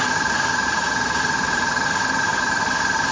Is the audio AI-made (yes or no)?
yes